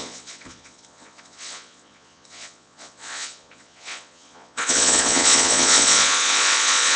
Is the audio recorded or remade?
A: remade